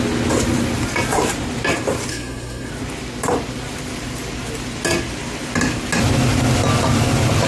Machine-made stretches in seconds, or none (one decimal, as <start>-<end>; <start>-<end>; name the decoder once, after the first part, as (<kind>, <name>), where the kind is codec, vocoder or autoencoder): 2.1-2.7 (codec, SNAC)